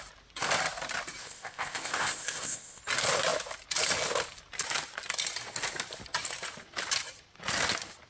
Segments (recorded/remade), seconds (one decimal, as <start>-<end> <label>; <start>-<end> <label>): 0.0-1.2 recorded; 1.2-2.8 remade; 2.8-8.1 recorded